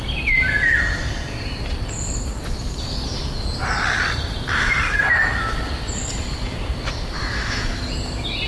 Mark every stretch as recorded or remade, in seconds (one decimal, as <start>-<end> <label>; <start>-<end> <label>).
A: 0.0-7.2 recorded; 7.2-7.9 remade; 7.9-8.5 recorded